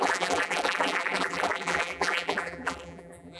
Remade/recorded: remade